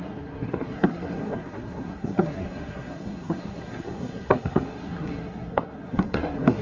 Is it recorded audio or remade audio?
remade